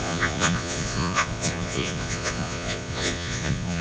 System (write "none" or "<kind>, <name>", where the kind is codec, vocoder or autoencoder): vocoder, Vocos